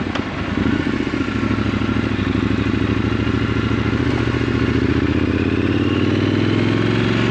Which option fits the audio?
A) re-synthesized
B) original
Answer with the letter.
B